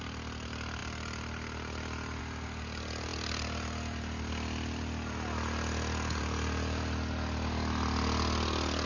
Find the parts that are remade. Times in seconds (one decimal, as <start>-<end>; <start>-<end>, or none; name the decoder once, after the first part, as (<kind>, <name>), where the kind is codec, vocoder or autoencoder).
none